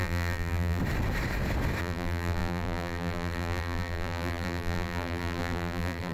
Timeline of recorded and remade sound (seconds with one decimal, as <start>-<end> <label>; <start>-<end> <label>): 0.0-0.8 remade; 0.8-1.8 recorded; 1.8-6.1 remade